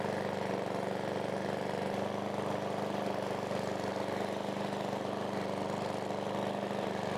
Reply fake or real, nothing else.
real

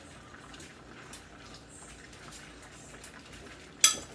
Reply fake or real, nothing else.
real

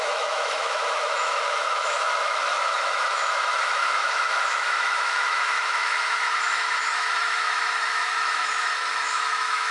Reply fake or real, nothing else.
fake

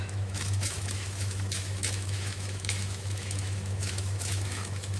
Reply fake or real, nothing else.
fake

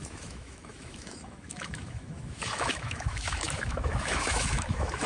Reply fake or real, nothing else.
fake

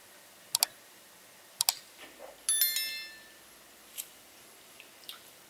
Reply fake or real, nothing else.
real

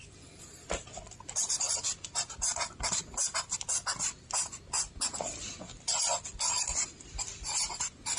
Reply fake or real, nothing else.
real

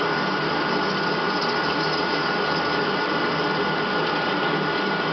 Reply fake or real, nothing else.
real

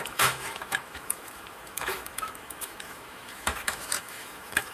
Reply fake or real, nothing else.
fake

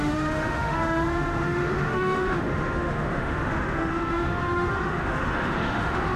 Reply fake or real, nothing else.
fake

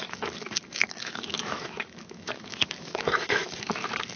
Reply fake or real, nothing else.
fake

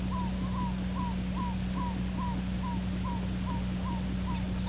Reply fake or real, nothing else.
real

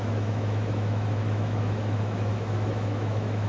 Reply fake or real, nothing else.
fake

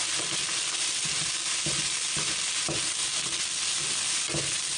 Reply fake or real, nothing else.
real